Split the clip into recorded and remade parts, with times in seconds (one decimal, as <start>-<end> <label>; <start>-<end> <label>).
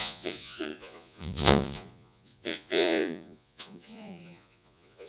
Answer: 0.0-5.1 remade